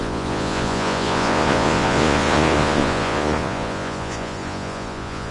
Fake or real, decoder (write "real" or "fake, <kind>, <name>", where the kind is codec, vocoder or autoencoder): fake, vocoder, Vocos